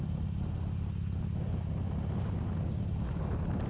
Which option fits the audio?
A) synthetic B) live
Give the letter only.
B